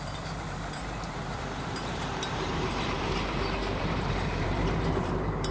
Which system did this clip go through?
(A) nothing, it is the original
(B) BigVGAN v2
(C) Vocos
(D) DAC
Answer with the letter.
B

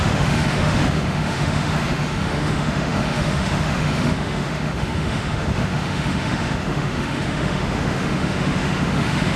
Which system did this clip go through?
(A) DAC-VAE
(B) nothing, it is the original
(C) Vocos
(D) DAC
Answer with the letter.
A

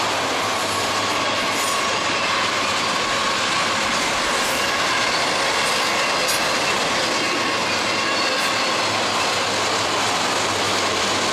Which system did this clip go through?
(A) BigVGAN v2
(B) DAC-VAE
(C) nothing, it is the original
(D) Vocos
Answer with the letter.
C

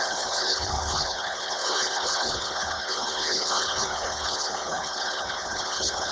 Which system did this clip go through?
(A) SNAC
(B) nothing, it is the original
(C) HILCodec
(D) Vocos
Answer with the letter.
C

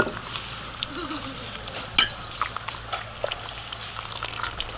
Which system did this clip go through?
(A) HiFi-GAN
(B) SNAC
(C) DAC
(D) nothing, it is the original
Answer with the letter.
D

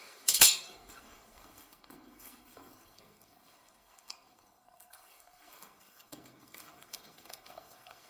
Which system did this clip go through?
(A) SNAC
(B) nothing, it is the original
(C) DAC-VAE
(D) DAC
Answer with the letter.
A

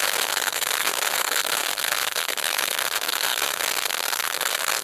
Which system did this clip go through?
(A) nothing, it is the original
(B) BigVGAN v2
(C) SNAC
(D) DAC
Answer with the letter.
C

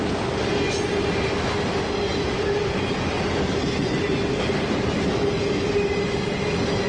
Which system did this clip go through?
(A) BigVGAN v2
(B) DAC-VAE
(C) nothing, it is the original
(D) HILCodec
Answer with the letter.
C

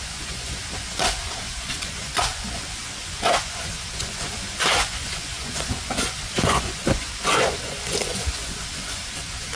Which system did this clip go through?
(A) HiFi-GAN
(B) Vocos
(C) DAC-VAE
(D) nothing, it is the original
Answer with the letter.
B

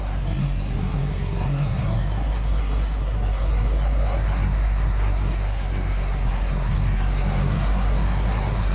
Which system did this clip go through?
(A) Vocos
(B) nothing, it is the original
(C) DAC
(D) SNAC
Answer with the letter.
D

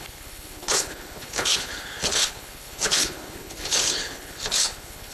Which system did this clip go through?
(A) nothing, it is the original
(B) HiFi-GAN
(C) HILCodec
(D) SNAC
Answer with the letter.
C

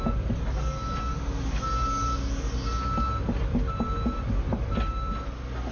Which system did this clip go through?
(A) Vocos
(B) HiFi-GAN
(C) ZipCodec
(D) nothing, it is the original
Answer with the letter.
D